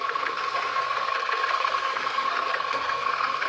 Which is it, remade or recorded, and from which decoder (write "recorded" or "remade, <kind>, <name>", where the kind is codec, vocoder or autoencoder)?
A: remade, codec, SNAC